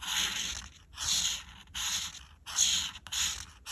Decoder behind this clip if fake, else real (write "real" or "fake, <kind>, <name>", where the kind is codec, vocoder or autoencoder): real